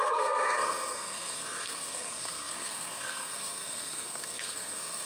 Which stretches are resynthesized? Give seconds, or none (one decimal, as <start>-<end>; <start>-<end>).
0.0-5.1